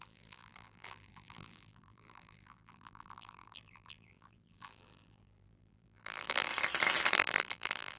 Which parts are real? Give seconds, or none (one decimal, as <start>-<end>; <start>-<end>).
6.5-7.1